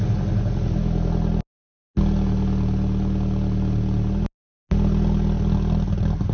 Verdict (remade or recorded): recorded